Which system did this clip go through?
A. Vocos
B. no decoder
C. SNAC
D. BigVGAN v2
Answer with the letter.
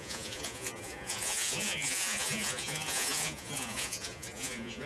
A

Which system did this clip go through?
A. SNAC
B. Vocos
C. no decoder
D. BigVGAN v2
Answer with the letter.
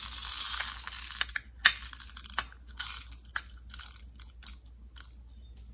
C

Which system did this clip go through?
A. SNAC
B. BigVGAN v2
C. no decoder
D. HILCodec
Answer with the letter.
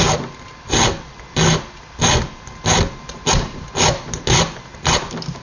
C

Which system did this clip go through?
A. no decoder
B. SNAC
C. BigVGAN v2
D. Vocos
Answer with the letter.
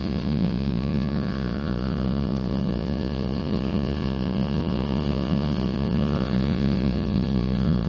D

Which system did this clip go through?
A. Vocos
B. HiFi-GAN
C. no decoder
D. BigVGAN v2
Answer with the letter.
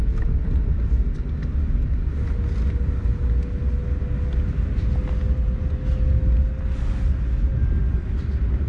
C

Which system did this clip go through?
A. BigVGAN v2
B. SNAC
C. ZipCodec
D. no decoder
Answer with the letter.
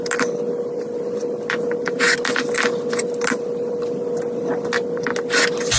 D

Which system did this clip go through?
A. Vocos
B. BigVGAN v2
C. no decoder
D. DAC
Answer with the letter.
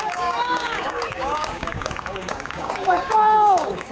D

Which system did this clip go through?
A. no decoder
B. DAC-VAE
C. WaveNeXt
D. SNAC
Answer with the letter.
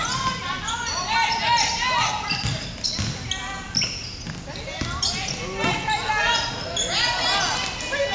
A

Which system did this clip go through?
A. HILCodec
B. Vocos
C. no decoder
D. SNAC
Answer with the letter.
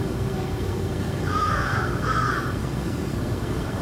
D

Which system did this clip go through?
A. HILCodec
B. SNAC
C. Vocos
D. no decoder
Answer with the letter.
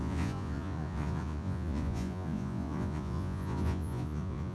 C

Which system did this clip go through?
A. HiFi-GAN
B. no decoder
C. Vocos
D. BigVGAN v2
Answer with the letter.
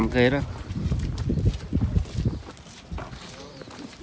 B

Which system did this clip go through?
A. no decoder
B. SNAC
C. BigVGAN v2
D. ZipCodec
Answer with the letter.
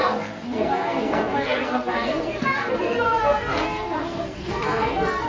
B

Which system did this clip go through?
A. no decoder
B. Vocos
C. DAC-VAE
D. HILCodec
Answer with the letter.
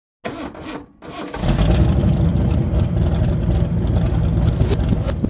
A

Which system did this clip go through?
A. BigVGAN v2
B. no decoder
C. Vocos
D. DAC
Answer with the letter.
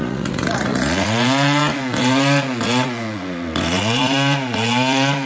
C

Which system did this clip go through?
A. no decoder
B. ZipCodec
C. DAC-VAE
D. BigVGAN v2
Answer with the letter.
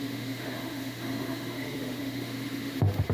C